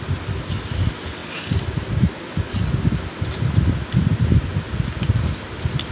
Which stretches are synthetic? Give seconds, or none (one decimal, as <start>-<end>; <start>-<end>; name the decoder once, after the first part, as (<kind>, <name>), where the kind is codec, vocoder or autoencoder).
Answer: none